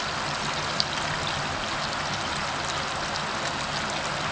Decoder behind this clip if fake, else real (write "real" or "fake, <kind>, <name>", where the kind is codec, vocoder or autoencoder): real